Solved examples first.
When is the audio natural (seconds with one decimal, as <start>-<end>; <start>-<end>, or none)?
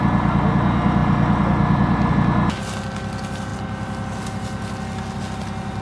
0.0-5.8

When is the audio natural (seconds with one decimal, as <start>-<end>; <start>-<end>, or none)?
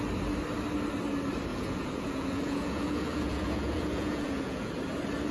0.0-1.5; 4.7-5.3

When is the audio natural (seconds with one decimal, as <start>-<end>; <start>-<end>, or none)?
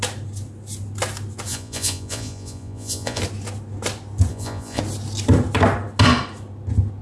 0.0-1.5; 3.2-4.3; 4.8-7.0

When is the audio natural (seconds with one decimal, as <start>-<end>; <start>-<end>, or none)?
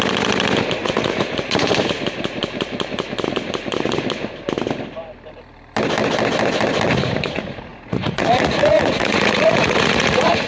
0.0-0.8; 1.7-7.7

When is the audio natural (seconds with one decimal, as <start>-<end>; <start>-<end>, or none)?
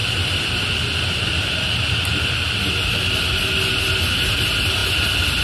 0.0-5.4